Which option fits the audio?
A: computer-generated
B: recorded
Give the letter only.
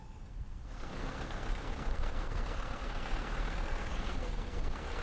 A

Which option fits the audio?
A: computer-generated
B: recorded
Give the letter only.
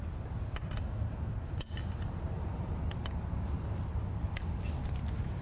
B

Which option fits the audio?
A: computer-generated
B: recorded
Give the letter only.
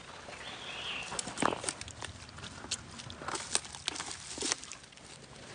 B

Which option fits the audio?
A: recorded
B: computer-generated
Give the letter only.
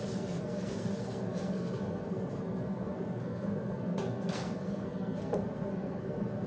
B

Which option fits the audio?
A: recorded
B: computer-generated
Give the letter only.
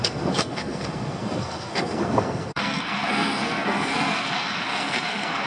B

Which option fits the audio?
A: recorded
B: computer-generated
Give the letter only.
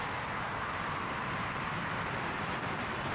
A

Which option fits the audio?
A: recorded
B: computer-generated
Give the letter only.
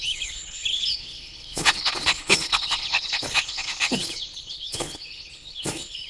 B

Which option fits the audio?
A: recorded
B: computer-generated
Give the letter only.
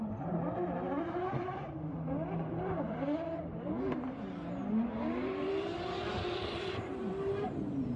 B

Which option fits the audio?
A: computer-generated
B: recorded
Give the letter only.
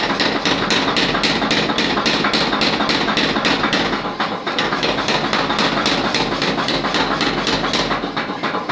B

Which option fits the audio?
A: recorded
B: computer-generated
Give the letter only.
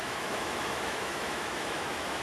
B